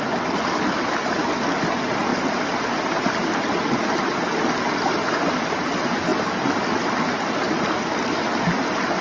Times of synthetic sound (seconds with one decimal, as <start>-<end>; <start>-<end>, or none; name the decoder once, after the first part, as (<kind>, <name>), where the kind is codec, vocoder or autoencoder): none